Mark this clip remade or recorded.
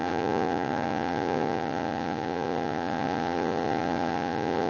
remade